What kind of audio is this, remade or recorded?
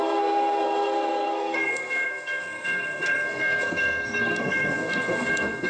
remade